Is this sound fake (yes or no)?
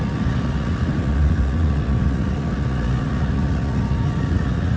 yes